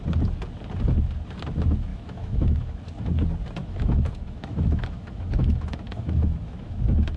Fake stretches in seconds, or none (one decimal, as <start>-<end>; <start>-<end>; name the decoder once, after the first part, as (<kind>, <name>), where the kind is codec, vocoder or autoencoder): 1.9-2.8 (autoencoder, DAC-VAE); 3.6-6.8